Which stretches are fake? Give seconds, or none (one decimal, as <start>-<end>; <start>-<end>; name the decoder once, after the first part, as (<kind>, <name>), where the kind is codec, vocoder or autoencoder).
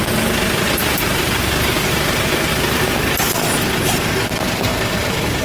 0.8-3.4 (vocoder, BigVGAN v2)